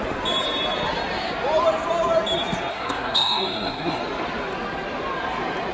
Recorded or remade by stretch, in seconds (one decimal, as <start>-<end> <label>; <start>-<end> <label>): 0.0-2.7 recorded; 2.7-4.0 remade; 4.0-5.7 recorded